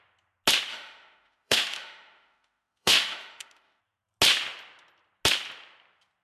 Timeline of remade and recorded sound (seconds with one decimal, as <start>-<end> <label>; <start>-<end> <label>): 0.0-0.7 recorded; 0.7-3.8 remade; 3.8-6.2 recorded

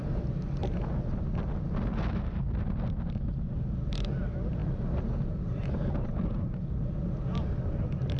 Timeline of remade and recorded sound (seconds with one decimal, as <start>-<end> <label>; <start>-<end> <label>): 0.0-8.2 recorded

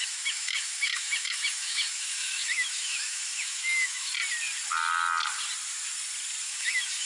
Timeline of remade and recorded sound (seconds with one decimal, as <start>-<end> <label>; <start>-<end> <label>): 0.0-4.1 remade; 4.1-6.4 recorded; 6.4-7.1 remade

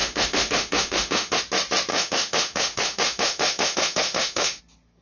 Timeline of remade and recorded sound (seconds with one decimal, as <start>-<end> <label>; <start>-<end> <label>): 0.0-1.4 remade; 1.4-1.9 recorded; 1.9-4.6 remade; 4.6-5.0 recorded

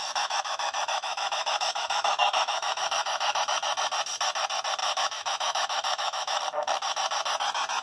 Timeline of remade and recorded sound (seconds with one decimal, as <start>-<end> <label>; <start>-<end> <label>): 0.0-3.4 remade; 3.4-4.8 recorded; 4.8-6.4 remade; 6.4-7.8 recorded

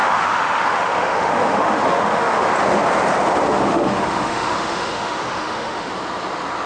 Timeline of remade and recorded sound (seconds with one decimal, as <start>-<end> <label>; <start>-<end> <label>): 0.0-2.5 remade; 2.5-3.7 recorded; 3.7-5.9 remade; 5.9-6.7 recorded

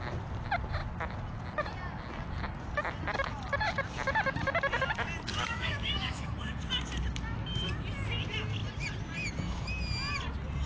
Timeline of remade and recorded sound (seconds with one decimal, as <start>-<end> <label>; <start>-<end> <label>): 0.0-5.3 recorded; 5.3-6.3 remade; 6.3-10.7 recorded